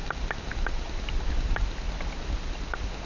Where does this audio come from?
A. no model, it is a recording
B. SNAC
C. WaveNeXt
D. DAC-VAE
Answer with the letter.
A